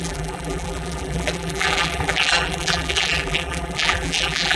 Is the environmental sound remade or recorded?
remade